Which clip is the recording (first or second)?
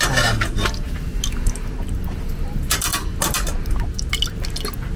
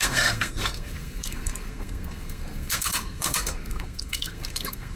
first